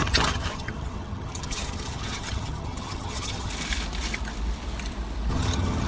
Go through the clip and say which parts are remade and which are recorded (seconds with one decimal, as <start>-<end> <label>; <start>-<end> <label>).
0.0-3.5 remade; 3.5-5.3 recorded; 5.3-5.9 remade